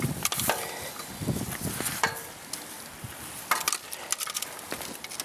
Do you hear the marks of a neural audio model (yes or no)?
no